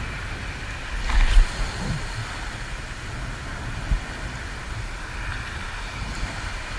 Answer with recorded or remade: recorded